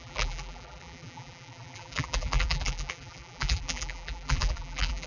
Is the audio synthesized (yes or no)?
yes